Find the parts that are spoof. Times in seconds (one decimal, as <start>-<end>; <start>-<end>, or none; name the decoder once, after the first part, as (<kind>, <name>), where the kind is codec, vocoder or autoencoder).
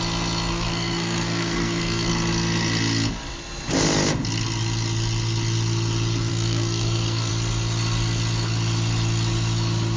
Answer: 0.5-2.1 (codec, SNAC); 6.3-7.3